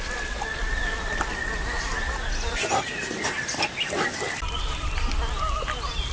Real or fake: real